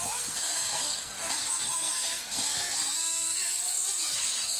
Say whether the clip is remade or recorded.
remade